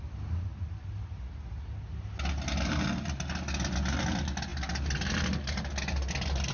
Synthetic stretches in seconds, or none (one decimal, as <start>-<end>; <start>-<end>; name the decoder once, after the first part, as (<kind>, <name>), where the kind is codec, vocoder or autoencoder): none